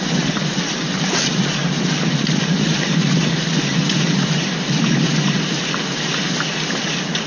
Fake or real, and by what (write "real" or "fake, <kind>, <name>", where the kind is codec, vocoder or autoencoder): real